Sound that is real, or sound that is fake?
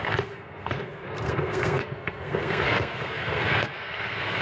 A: fake